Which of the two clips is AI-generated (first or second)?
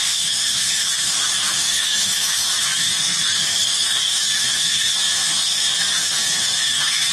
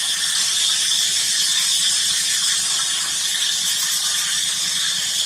first